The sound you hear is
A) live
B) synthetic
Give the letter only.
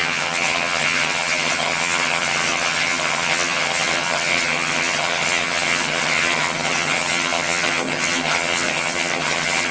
B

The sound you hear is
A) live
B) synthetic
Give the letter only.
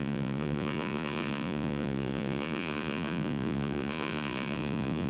B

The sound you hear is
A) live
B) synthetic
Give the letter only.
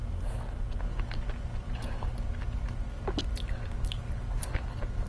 A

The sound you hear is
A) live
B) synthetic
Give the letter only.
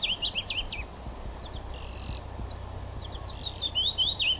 A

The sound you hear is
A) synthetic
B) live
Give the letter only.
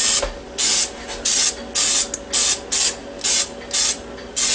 B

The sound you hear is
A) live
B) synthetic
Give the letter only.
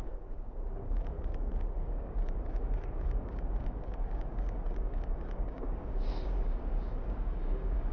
B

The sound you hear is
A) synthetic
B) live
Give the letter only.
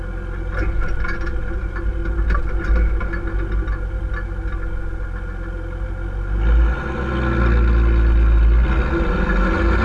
B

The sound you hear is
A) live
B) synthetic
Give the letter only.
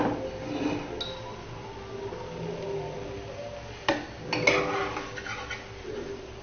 A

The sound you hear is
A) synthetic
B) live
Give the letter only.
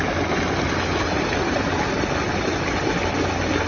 B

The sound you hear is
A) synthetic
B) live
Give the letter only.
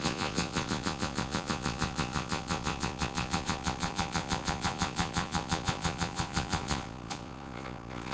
A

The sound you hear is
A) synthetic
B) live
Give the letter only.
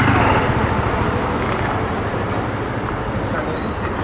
B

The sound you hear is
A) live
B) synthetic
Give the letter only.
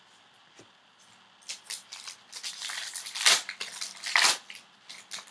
A